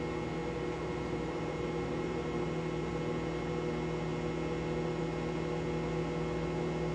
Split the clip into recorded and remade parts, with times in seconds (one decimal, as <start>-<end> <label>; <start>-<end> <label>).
0.0-0.4 recorded; 0.4-3.0 remade; 3.0-6.9 recorded